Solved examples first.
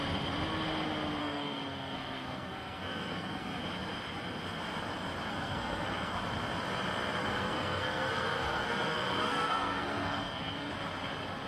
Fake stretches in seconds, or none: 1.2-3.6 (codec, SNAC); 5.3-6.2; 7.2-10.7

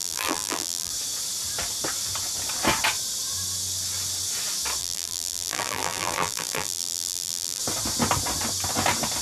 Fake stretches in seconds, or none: 0.0-0.9 (vocoder, BigVGAN v2); 4.8-7.6

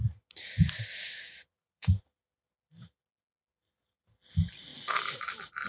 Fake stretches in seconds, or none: 0.9-2.0 (vocoder, Vocos)

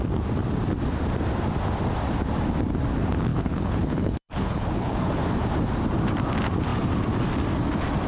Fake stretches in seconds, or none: 3.3-5.2 (codec, HILCodec)

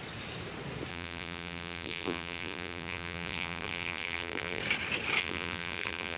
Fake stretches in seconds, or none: 0.9-4.6 (vocoder, BigVGAN v2); 5.2-6.2

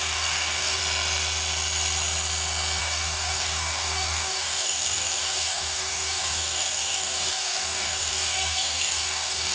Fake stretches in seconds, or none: 0.0-0.8 (codec, DAC); 2.8-9.5

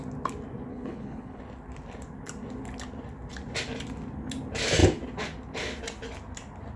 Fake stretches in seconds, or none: 0.7-1.4 (codec, HILCodec)